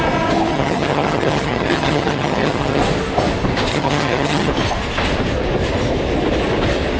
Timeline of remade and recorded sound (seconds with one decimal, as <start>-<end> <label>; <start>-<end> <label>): 0.0-0.5 recorded; 0.5-2.8 remade; 2.8-3.7 recorded; 3.7-4.5 remade; 4.5-7.0 recorded

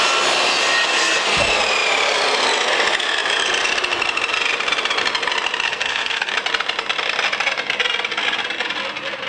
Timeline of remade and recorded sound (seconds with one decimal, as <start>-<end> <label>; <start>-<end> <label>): 0.0-5.7 recorded; 5.7-6.3 remade; 6.3-9.3 recorded

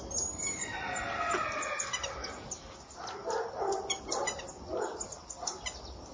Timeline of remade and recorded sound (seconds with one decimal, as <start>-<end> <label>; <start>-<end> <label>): 0.0-6.1 recorded

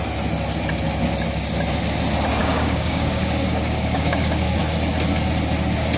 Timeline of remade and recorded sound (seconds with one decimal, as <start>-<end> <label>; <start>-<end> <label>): 0.0-2.4 recorded; 2.4-4.6 remade; 4.6-6.0 recorded

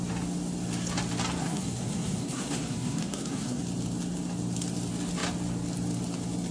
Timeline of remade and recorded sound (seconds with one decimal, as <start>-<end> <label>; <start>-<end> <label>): 0.0-1.4 recorded; 1.4-3.6 remade; 3.6-6.5 recorded

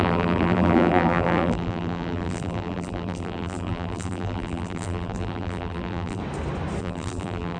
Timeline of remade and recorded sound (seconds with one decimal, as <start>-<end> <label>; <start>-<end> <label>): 0.0-6.2 remade; 6.2-6.8 recorded; 6.8-7.6 remade

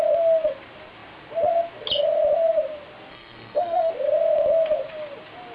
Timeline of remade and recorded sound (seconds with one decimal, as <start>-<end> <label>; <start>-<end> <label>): 0.0-3.1 recorded; 3.1-3.9 remade; 3.9-5.5 recorded